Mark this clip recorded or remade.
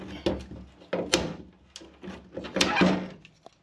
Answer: recorded